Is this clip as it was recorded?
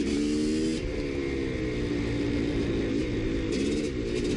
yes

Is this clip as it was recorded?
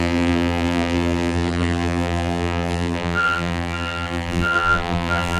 no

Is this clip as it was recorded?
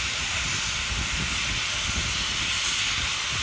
yes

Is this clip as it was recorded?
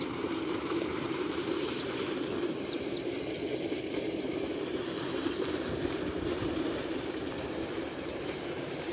no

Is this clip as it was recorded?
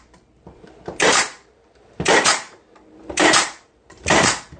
no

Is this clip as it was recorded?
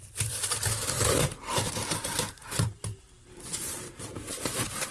no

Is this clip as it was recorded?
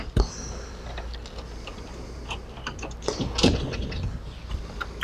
yes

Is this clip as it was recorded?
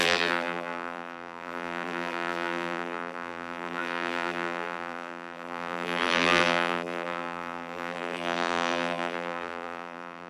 no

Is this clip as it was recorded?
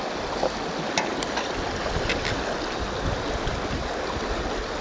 yes